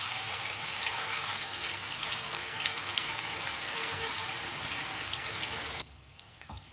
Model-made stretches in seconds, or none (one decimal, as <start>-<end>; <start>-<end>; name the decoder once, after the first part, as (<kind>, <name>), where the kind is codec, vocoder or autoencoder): 0.0-4.1 (codec, SNAC); 4.8-6.7

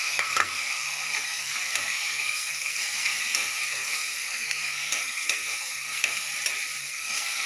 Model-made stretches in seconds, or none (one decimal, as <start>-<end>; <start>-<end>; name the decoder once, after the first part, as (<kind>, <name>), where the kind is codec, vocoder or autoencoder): 0.0-6.3 (codec, SNAC); 6.8-7.5

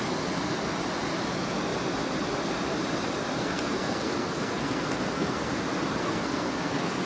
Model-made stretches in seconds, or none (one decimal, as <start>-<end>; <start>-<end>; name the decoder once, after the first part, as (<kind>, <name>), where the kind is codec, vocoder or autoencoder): 3.4-5.6 (codec, SNAC); 6.0-7.1

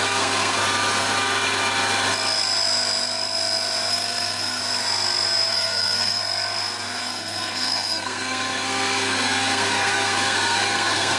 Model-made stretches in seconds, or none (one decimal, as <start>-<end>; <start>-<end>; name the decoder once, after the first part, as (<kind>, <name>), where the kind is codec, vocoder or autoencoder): 0.0-0.6 (codec, SNAC); 3.9-4.6; 5.5-6.2; 7.0-11.2

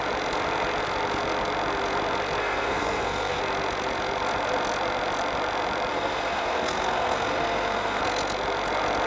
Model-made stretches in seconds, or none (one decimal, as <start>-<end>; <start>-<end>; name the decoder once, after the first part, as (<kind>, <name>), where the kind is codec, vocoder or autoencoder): 2.4-3.4 (codec, SNAC); 5.9-8.0

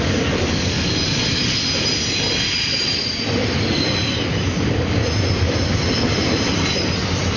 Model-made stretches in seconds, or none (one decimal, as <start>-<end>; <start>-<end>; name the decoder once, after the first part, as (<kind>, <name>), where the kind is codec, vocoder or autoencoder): none

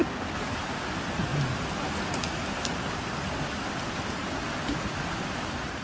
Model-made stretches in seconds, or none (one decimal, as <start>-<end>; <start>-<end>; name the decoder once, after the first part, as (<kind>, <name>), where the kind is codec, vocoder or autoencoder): none

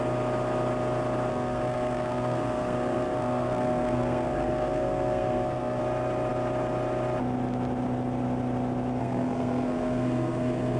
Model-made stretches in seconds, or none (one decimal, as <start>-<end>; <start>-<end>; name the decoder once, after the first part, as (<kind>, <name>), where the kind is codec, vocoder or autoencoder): 1.3-5.8 (codec, SNAC); 9.0-10.8